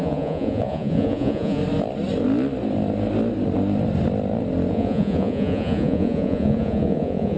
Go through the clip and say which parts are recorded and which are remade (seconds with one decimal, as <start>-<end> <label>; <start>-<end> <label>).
0.0-1.6 remade; 1.6-4.7 recorded; 4.7-7.4 remade